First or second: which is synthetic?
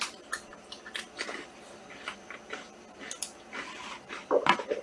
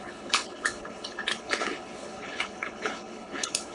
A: second